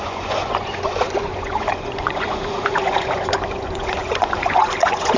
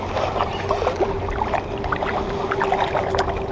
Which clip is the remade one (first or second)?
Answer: first